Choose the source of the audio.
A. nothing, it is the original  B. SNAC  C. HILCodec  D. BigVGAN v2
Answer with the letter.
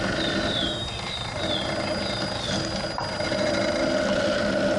A